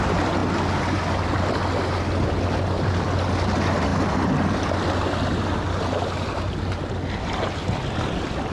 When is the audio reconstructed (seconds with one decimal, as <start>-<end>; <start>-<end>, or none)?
7.6-8.5